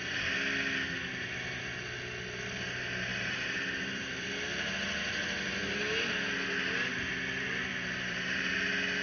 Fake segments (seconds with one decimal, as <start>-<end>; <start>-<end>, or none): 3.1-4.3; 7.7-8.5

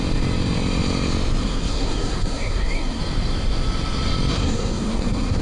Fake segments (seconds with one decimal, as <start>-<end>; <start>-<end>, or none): 1.4-3.0; 4.3-5.4

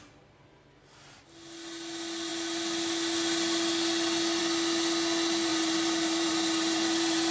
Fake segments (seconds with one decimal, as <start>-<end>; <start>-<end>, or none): 5.5-7.3

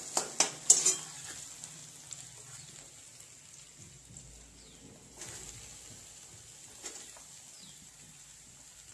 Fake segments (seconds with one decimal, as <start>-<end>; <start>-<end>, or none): none

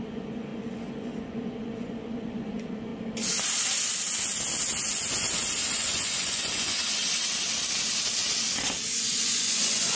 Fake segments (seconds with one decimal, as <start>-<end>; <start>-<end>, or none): 0.0-2.9; 5.7-7.0; 8.9-10.0

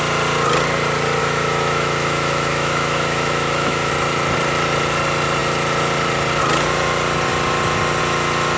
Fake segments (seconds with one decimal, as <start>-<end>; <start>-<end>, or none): 1.2-3.9

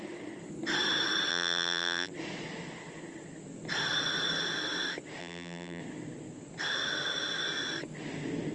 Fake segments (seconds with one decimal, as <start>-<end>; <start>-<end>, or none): 1.3-2.1; 5.2-5.8